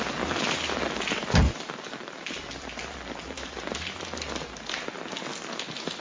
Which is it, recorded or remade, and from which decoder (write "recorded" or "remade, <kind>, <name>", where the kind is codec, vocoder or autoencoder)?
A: recorded